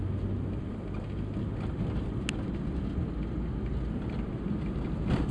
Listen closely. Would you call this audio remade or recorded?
recorded